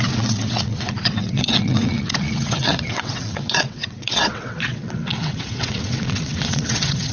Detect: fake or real fake